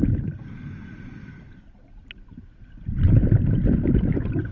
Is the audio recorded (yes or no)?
no